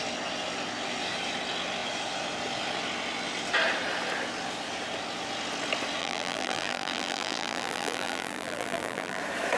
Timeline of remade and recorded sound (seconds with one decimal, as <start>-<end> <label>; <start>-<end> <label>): 0.0-6.0 recorded; 6.0-9.2 remade; 9.2-9.6 recorded

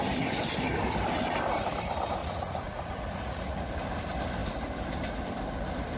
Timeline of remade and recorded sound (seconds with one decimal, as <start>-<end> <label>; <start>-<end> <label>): 0.0-2.2 recorded; 2.2-3.7 remade; 3.7-6.0 recorded

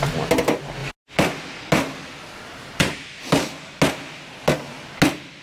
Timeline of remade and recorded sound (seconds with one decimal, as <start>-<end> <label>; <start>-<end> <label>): 0.0-5.4 recorded

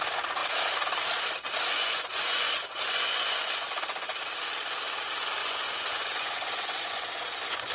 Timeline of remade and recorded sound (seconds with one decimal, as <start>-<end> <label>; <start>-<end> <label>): 0.0-1.7 recorded; 1.7-3.7 remade; 3.7-5.4 recorded; 5.4-7.7 remade

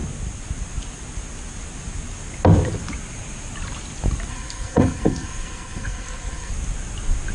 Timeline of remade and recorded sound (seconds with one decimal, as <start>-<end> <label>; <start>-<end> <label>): 0.0-4.3 recorded; 4.3-6.5 remade; 6.5-7.3 recorded

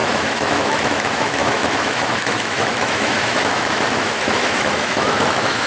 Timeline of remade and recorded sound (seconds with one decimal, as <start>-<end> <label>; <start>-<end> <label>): 0.0-5.7 remade